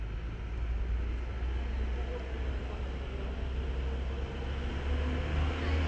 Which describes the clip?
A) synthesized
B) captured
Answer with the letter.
B